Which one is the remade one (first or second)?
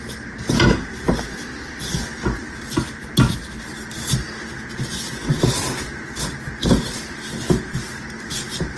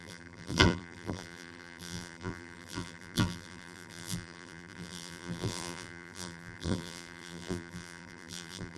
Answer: second